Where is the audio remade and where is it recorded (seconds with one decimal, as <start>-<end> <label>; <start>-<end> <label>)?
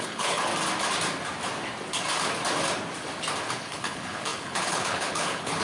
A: 0.0-0.5 remade; 0.5-3.5 recorded; 3.5-5.6 remade